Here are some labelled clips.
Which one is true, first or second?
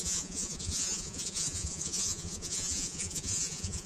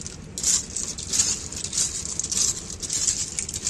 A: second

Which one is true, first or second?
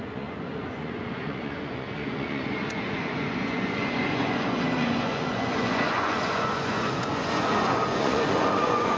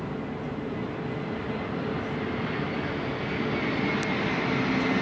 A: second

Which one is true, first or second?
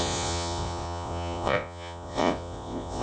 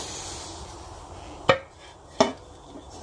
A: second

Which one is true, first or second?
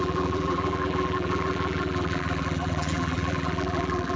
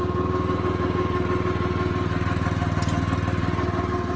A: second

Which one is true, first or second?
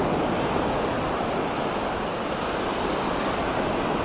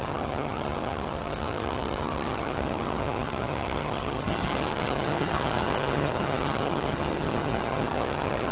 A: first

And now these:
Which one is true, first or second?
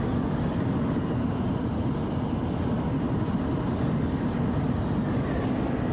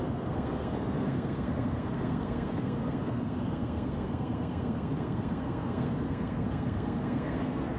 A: first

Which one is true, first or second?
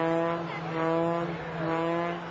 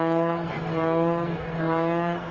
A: first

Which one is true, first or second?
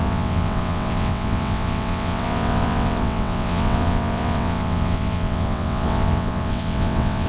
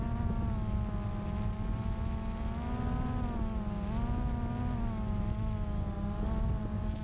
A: second